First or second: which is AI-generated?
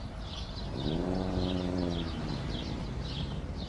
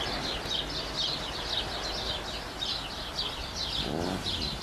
first